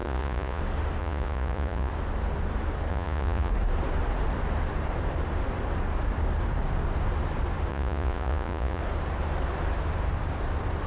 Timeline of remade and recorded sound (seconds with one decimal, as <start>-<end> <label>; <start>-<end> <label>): 0.0-0.6 remade; 0.6-1.0 recorded; 1.0-1.9 remade; 1.9-2.9 recorded; 2.9-3.5 remade; 3.5-7.7 recorded; 7.7-8.8 remade; 8.8-10.9 recorded